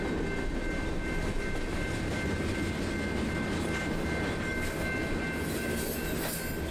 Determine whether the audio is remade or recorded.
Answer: recorded